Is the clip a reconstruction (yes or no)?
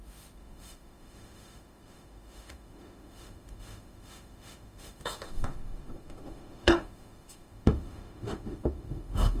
yes